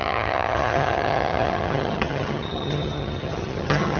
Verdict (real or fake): fake